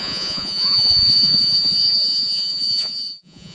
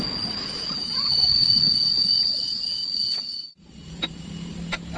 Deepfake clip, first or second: first